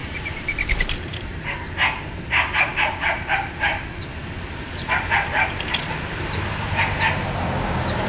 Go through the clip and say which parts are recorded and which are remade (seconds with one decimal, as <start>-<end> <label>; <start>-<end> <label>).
0.0-4.0 remade; 4.0-8.1 recorded